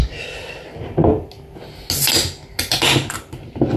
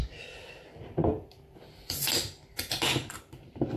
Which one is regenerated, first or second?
second